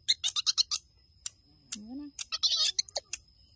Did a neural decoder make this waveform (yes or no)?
no